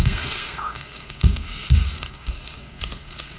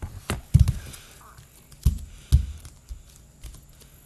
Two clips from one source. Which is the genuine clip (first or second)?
second